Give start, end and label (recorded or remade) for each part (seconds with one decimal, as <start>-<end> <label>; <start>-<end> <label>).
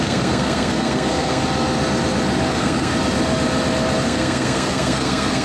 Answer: 0.0-1.4 remade; 1.4-2.5 recorded; 2.5-2.9 remade; 2.9-4.0 recorded; 4.0-5.4 remade